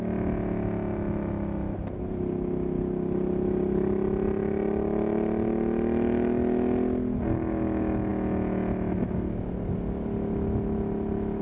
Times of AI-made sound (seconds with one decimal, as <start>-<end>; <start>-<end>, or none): none